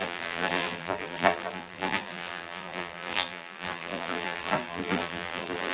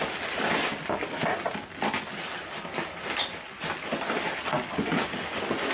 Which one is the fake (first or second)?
first